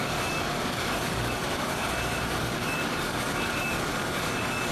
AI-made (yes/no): yes